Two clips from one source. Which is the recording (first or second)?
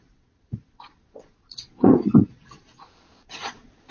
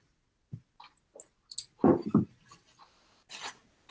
second